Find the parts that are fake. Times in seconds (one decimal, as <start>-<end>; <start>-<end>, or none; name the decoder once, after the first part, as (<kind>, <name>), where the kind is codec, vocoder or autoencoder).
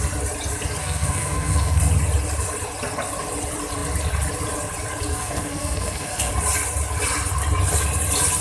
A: 0.8-1.8 (codec, SNAC); 5.1-6.3